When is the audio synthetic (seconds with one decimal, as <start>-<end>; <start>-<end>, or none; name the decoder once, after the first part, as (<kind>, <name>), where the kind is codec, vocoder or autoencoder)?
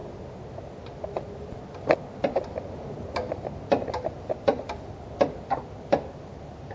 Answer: none